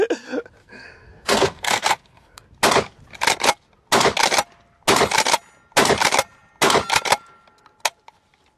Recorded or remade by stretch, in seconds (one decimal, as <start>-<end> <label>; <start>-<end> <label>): 0.0-0.6 recorded; 0.6-2.4 remade; 2.4-8.6 recorded